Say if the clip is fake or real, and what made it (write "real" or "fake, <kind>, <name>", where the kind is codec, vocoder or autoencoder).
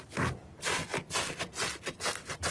real